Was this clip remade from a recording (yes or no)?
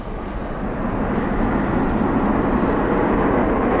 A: no